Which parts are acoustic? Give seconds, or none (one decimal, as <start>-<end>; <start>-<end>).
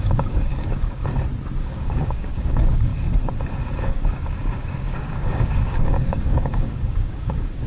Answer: 1.0-1.6; 2.9-3.8